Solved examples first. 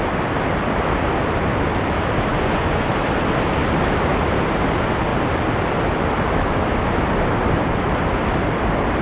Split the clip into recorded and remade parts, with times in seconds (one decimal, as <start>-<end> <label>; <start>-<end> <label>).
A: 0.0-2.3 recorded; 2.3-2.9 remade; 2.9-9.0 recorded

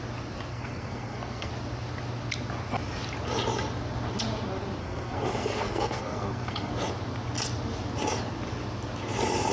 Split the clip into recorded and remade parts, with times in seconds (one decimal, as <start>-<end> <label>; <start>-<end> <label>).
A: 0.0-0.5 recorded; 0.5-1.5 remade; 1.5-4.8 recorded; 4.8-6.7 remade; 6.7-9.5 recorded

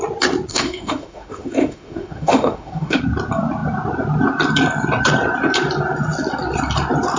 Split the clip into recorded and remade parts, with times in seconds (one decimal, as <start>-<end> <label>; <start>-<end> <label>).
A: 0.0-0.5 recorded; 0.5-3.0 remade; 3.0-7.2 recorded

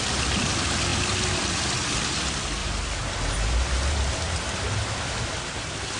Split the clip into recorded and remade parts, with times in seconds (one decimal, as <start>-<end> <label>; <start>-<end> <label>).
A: 0.0-6.0 recorded